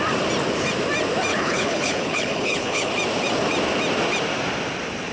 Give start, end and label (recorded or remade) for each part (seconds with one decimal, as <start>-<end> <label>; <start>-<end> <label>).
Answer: 0.0-1.3 recorded; 1.3-2.9 remade; 2.9-5.1 recorded